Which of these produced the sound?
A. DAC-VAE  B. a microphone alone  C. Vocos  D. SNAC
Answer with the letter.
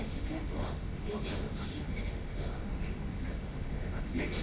A